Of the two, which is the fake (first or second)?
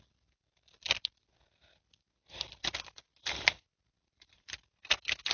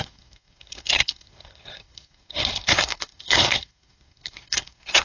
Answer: second